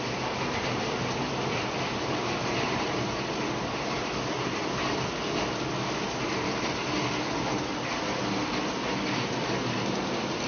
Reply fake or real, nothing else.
real